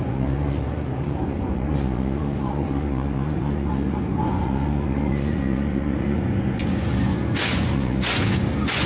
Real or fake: fake